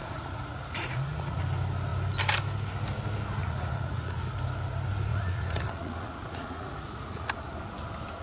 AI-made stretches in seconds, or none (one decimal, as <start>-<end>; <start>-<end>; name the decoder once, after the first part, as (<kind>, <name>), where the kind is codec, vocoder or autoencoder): 0.0-1.4 (vocoder, Vocos); 3.4-4.2; 5.1-7.3